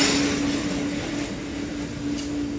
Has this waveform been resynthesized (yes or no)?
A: no